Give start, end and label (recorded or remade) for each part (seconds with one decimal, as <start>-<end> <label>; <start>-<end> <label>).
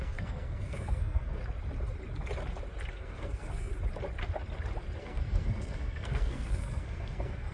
0.0-1.4 remade; 1.4-2.9 recorded; 2.9-3.7 remade; 3.7-5.0 recorded; 5.0-7.5 remade